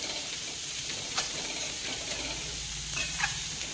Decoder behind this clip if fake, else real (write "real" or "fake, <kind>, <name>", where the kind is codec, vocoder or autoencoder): fake, vocoder, BigVGAN v2